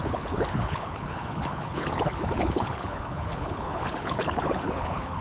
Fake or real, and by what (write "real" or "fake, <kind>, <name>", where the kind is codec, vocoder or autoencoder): fake, codec, HILCodec